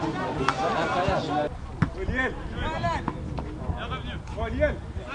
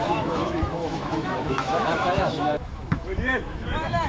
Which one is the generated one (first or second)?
second